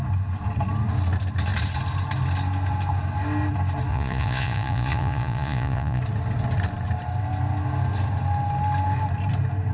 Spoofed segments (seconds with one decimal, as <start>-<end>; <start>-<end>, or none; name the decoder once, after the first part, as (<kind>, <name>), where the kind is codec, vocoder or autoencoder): 3.9-6.0 (vocoder, Vocos)